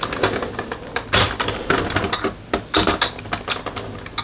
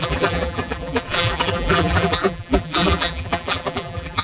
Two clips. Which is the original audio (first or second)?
first